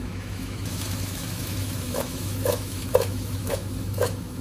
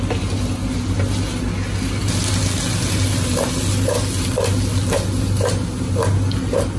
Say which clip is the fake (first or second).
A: first